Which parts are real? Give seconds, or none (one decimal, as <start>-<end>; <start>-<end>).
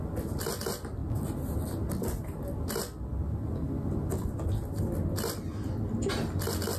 0.0-6.8